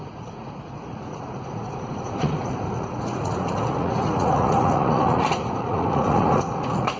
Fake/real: fake